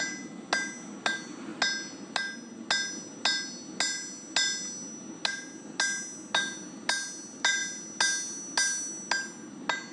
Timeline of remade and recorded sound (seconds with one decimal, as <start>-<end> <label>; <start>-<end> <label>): 0.0-9.9 recorded